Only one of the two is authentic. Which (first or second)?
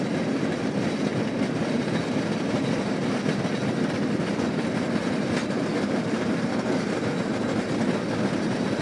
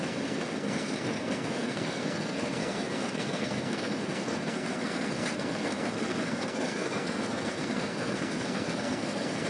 first